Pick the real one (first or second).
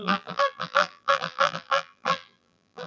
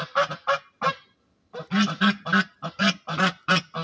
second